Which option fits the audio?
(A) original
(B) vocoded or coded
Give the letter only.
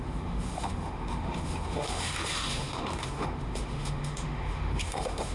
B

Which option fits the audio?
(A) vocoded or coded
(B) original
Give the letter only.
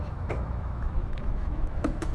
A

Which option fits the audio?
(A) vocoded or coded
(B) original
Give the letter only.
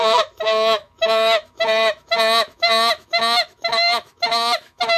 A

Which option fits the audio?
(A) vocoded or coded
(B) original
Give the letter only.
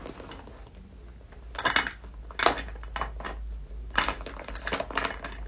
B